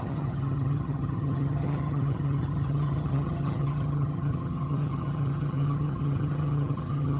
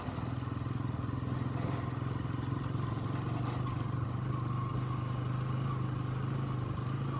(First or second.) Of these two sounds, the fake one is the first